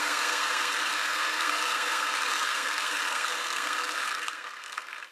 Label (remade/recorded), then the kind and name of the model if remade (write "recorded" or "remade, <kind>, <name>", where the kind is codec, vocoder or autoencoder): remade, codec, SNAC